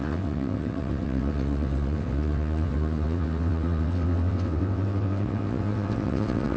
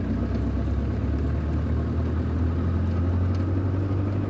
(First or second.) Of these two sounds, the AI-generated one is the first